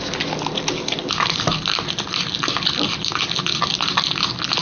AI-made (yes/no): no